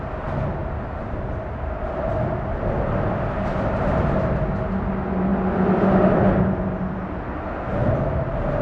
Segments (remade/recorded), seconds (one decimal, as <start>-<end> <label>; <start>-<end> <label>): 0.0-8.6 recorded